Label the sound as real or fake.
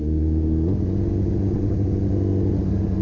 real